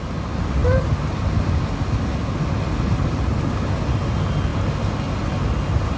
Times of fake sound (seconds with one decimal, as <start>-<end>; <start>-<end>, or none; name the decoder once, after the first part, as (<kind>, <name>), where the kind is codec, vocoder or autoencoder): none